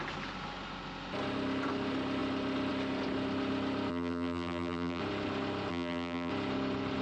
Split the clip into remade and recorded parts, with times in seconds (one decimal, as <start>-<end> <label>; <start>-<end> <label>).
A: 0.0-3.9 recorded; 3.9-5.0 remade; 5.0-5.7 recorded; 5.7-6.3 remade; 6.3-7.0 recorded